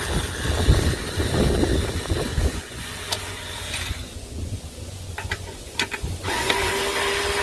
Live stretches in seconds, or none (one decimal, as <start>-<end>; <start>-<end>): 0.0-2.3; 6.7-7.4